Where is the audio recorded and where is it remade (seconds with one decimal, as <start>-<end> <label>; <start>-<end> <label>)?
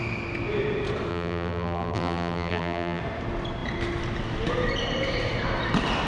0.0-1.1 recorded; 1.1-3.0 remade; 3.0-6.1 recorded